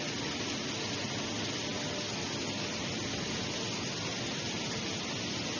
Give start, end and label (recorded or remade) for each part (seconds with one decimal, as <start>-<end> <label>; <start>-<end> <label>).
0.0-5.6 recorded